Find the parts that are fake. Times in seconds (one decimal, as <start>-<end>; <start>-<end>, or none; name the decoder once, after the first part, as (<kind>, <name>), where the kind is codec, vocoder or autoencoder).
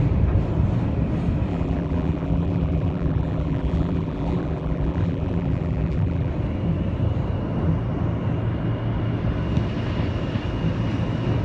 1.5-6.3 (vocoder, BigVGAN v2)